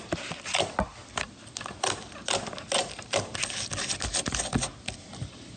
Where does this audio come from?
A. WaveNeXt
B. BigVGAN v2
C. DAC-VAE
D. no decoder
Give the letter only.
D